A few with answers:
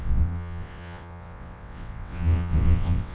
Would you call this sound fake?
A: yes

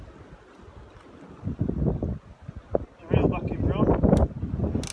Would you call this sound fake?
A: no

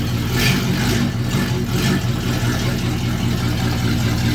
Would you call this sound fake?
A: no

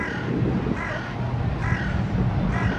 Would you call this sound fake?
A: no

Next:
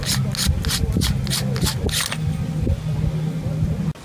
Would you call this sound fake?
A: no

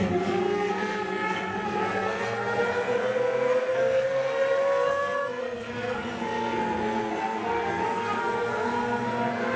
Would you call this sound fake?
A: yes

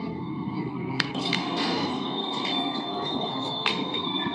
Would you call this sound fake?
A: yes